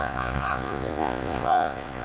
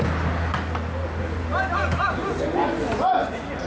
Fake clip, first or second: first